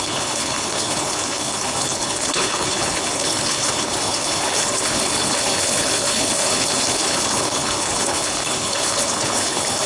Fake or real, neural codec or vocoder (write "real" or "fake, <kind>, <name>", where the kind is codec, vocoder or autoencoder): fake, codec, HILCodec